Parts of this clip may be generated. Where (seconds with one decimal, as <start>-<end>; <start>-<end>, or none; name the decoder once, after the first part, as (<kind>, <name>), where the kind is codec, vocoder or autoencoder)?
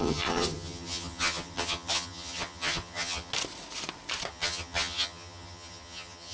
0.0-3.3 (vocoder, HiFi-GAN); 4.3-6.3